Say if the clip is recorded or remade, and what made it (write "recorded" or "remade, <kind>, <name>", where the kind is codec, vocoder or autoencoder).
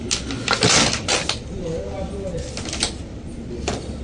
recorded